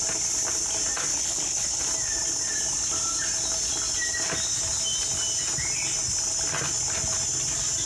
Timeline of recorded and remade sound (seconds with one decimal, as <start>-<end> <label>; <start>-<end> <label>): 0.0-1.1 recorded; 1.1-1.8 remade; 1.8-7.9 recorded

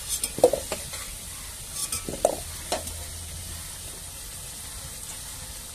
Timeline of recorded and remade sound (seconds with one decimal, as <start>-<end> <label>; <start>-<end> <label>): 0.0-5.7 recorded

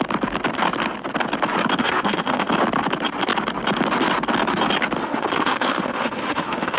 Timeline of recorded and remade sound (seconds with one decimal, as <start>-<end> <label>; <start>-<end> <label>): 0.0-1.8 recorded; 1.8-2.5 remade; 2.5-5.0 recorded; 5.0-6.8 remade